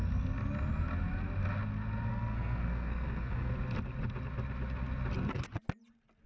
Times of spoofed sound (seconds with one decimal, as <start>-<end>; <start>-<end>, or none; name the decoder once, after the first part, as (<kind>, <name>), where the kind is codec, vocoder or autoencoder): 2.1-3.5 (codec, SNAC)